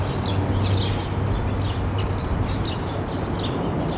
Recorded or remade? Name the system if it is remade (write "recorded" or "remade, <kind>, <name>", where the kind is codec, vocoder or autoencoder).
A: recorded